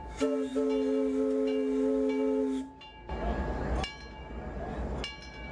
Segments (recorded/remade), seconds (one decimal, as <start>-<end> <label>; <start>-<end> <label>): 0.0-5.5 recorded